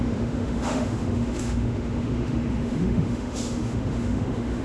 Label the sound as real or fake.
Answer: fake